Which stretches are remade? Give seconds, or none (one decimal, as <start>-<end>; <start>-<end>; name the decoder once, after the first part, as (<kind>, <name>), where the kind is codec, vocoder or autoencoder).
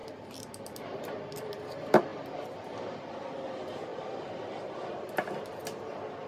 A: 2.1-3.1 (vocoder, BigVGAN v2); 3.9-5.5